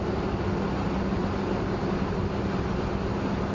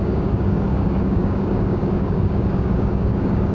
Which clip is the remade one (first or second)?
second